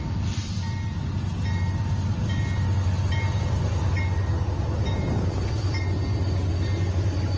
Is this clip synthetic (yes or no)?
no